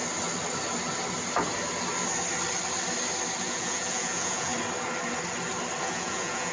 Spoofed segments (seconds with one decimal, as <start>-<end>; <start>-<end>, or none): 3.4-4.5; 5.8-6.5